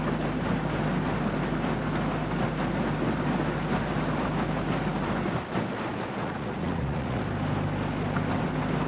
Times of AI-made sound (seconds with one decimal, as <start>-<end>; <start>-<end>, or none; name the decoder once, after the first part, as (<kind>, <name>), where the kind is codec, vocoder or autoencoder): 6.2-7.2 (vocoder, Vocos)